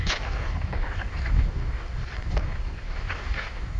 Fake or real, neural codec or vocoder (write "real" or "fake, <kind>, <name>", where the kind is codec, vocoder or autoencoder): fake, codec, DAC